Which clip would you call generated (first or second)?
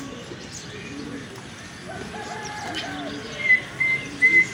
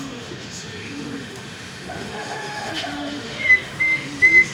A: second